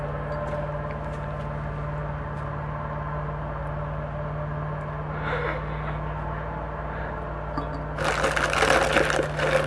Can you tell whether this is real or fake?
real